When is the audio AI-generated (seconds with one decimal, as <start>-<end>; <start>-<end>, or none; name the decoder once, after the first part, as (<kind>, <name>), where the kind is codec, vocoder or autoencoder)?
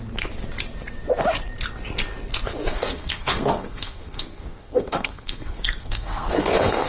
2.7-6.9 (codec, SNAC)